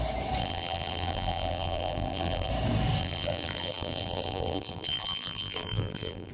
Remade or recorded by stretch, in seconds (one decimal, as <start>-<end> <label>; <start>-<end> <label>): 0.0-0.4 recorded; 0.4-2.5 remade; 2.5-3.0 recorded; 3.0-6.3 remade